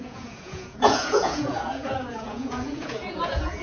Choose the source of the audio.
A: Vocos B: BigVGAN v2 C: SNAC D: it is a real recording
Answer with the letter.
A